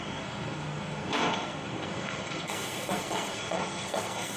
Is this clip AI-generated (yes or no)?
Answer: yes